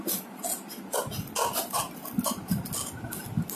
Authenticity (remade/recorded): recorded